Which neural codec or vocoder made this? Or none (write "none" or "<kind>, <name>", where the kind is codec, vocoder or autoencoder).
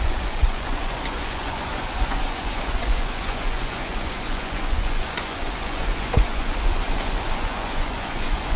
vocoder, Vocos